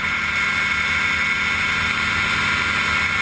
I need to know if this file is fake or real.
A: real